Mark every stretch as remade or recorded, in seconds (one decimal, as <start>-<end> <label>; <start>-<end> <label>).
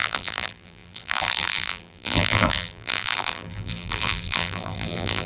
0.0-5.3 remade